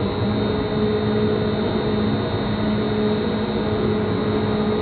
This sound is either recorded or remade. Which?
recorded